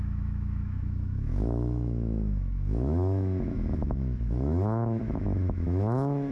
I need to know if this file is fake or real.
fake